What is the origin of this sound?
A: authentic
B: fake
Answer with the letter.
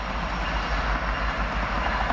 A